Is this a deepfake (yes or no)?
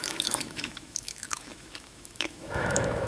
yes